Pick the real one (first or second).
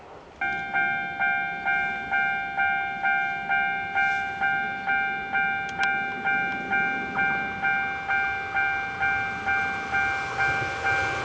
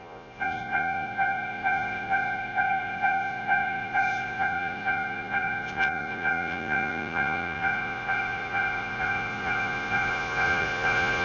first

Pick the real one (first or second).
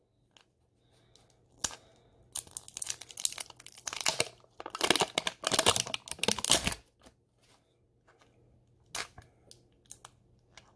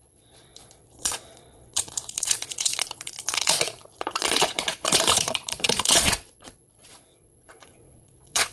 first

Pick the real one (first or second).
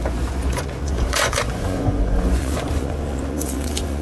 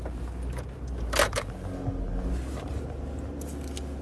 second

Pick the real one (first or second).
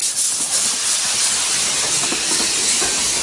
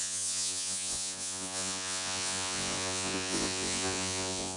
first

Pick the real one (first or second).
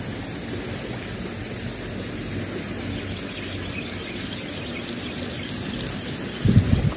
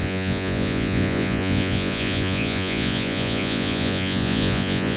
first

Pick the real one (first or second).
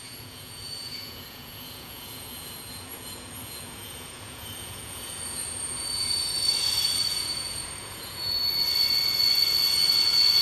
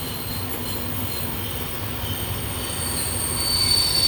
second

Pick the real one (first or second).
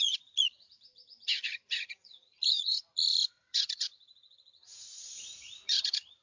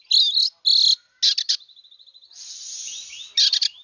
second